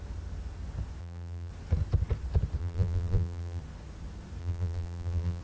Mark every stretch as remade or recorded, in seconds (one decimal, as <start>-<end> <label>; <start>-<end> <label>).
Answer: 0.0-1.0 recorded; 1.0-1.5 remade; 1.5-2.6 recorded; 2.6-3.6 remade; 3.6-4.4 recorded; 4.4-5.4 remade